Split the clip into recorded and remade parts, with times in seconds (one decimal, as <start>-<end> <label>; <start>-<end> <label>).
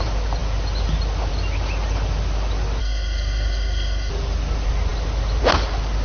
0.0-2.8 recorded; 2.8-4.1 remade; 4.1-6.0 recorded